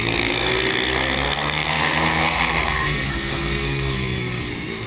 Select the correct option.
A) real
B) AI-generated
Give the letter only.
B